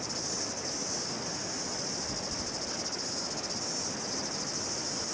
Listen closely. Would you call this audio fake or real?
real